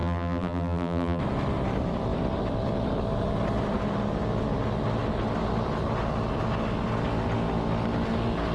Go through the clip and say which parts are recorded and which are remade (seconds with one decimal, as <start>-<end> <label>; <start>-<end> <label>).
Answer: 0.0-1.2 remade; 1.2-8.5 recorded